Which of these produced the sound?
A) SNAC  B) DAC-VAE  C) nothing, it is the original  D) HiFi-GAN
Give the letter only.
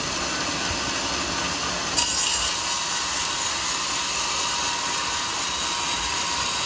C